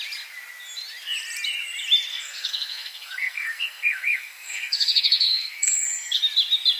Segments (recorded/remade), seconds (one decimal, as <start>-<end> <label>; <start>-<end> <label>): 0.0-2.1 recorded; 2.1-6.2 remade; 6.2-6.8 recorded